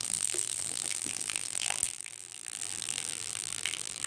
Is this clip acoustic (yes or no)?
no